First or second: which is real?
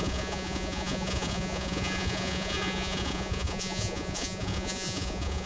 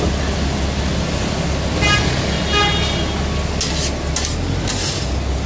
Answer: second